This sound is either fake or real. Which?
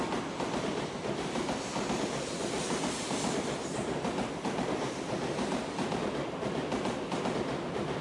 real